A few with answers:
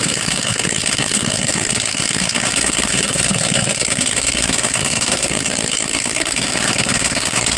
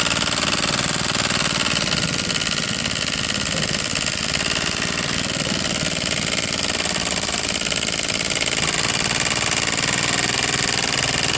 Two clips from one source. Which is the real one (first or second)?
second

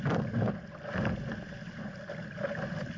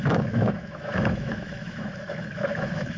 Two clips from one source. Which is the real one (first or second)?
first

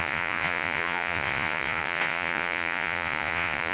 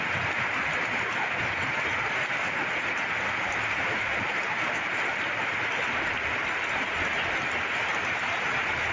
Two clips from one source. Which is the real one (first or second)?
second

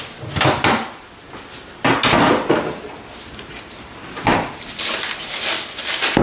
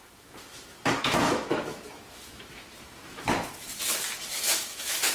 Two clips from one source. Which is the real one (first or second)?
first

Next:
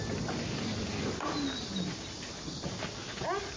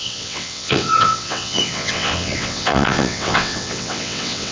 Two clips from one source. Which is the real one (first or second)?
first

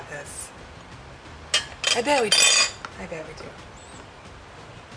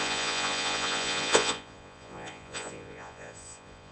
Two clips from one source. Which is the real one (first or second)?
first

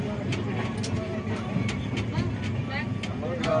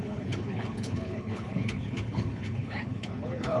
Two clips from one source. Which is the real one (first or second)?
first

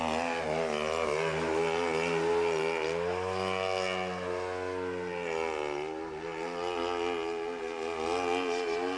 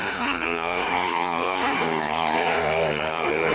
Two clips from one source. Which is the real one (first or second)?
first